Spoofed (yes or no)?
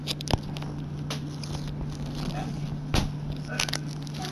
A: no